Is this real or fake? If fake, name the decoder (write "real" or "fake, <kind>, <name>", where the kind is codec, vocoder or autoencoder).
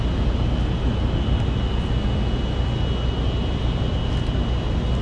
real